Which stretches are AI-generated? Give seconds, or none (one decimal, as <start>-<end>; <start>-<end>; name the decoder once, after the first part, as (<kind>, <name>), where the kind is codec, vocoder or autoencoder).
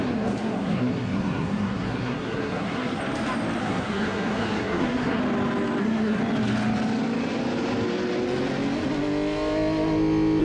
0.0-3.0 (codec, SNAC); 3.6-5.2; 5.8-6.2